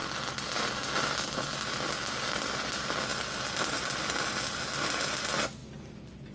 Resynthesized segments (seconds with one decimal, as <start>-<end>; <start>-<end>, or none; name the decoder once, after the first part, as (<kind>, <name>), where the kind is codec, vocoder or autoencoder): none